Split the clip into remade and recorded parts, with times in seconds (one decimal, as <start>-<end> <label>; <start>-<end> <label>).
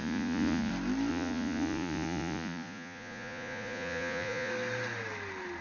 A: 0.0-0.7 remade; 0.7-1.1 recorded; 1.1-4.5 remade; 4.5-5.6 recorded